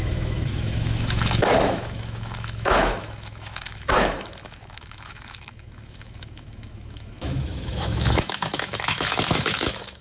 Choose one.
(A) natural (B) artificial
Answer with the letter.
B